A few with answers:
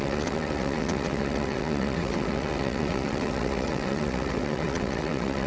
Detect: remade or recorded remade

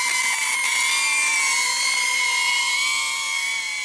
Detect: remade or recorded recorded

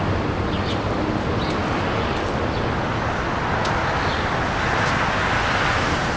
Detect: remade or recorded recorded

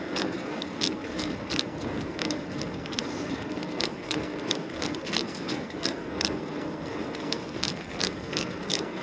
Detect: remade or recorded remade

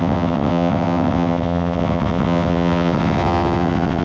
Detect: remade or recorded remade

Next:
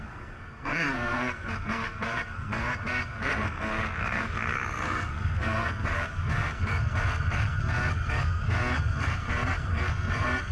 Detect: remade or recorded remade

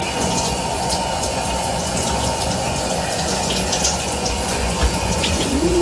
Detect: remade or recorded remade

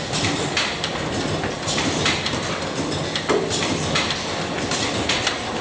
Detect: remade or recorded recorded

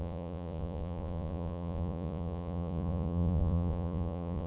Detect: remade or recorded remade